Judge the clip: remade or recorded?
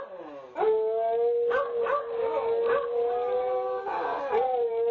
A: recorded